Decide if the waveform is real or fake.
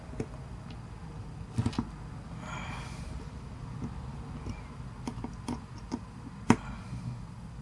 real